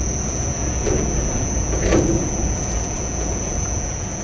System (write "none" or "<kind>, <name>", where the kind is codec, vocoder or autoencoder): vocoder, Vocos